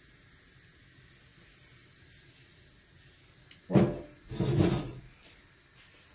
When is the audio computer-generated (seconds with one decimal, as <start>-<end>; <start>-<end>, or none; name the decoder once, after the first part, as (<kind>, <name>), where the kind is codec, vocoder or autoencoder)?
none